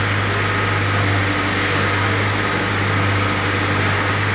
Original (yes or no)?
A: yes